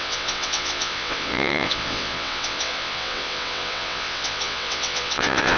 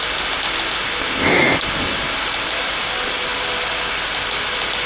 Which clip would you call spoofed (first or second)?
first